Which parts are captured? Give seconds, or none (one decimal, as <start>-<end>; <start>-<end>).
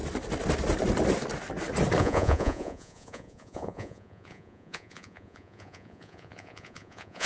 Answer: 0.0-2.0